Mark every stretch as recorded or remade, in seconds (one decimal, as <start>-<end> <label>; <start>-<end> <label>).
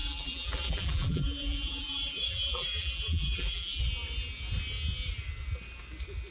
0.0-3.8 remade; 3.8-6.3 recorded